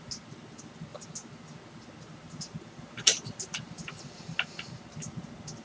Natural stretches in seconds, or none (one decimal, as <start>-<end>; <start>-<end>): 0.0-5.6